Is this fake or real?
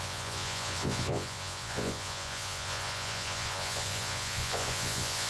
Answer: fake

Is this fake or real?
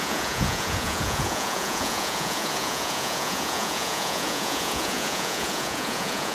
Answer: fake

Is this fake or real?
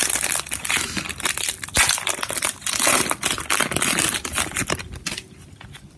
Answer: real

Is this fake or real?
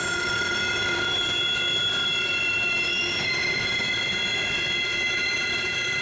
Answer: real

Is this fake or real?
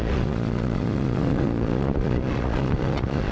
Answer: fake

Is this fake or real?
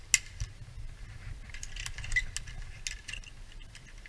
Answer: real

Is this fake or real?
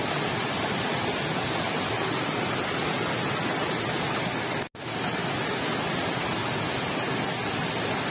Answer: real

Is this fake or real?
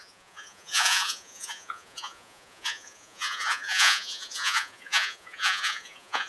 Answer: fake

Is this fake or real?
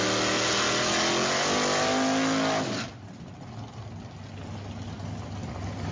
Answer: real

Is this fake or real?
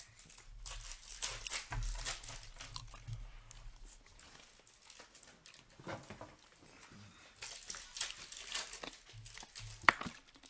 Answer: real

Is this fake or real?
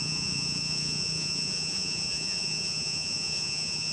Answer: fake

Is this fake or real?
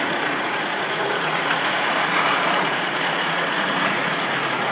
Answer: fake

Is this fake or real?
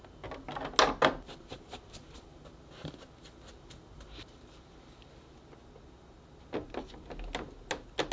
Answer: real